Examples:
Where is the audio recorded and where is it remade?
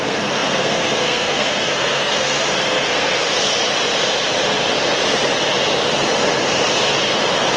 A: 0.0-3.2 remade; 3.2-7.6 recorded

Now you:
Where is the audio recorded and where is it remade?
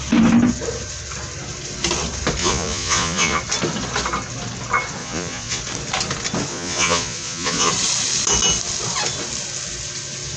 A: 0.0-2.4 recorded; 2.4-3.4 remade; 3.4-5.0 recorded; 5.0-5.6 remade; 5.6-6.5 recorded; 6.5-7.7 remade; 7.7-10.4 recorded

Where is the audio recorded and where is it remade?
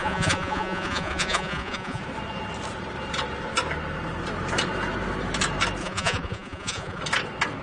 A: 0.0-2.0 remade; 2.0-5.8 recorded; 5.8-7.0 remade; 7.0-7.6 recorded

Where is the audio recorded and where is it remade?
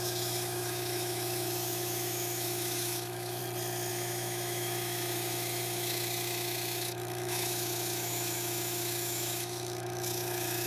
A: 0.0-3.4 remade; 3.4-3.9 recorded; 3.9-10.7 remade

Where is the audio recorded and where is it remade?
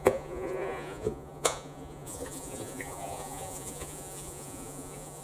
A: 0.0-5.2 remade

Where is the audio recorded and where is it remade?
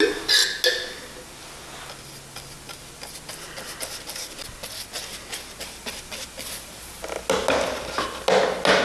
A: 0.0-8.8 recorded